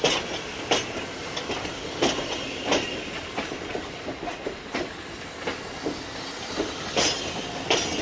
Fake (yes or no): no